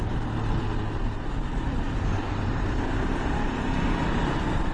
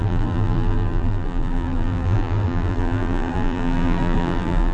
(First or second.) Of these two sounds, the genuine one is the first